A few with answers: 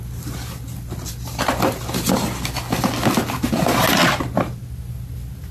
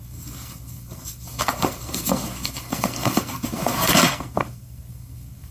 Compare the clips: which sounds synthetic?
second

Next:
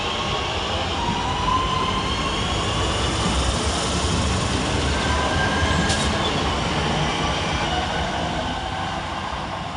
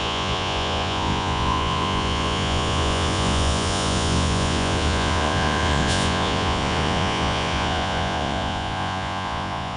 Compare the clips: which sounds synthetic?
second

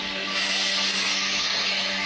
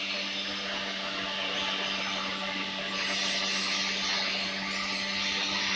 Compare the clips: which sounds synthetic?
first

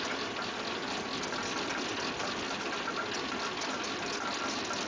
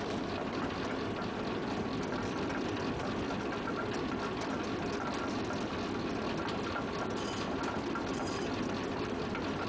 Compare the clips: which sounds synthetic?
second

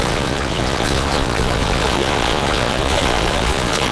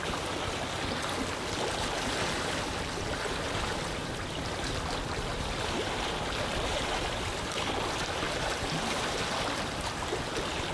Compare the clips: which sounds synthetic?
first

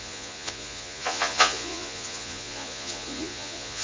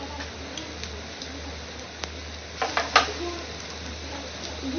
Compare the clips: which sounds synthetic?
first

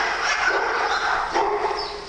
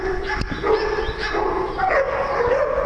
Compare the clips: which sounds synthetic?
first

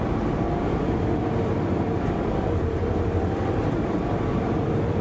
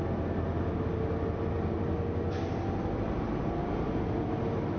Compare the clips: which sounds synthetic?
first